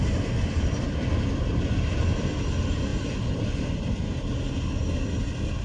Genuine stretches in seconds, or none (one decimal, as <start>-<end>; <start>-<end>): 0.0-5.6